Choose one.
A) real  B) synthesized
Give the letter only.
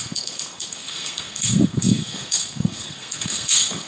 B